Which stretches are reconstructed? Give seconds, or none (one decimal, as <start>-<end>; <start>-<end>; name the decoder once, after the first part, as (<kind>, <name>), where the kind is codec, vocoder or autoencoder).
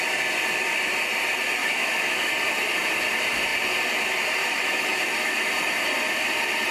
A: 1.6-2.3 (autoencoder, DAC-VAE); 4.4-5.5